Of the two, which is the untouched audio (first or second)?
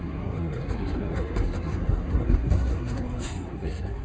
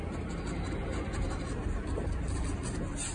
second